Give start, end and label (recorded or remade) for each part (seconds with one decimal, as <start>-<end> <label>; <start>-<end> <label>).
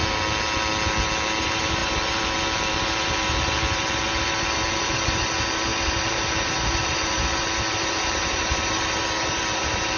0.0-1.4 recorded; 1.4-10.0 remade